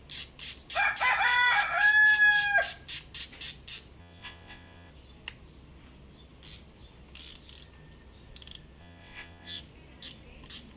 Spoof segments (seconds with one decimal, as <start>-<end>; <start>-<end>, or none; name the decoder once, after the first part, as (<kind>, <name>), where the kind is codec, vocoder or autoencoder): 4.0-4.9 (vocoder, WaveNeXt); 8.8-9.6